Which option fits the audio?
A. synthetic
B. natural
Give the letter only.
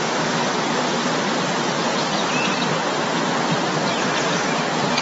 B